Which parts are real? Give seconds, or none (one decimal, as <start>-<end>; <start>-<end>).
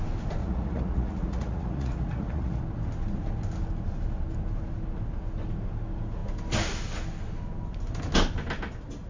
0.0-0.4; 2.6-9.1